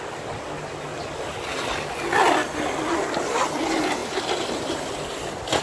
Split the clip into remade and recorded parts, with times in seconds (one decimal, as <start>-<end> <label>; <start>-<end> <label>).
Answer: 0.0-5.6 recorded